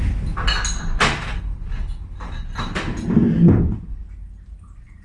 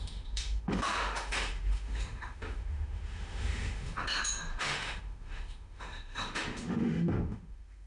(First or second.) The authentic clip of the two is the first